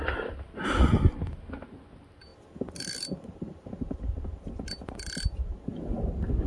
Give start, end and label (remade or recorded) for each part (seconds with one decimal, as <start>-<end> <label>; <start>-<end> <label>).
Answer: 0.0-6.5 recorded